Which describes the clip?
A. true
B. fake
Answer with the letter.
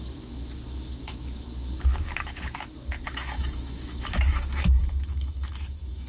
B